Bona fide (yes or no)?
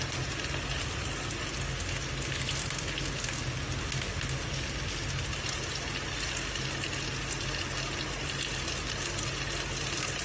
yes